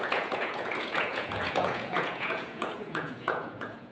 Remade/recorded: remade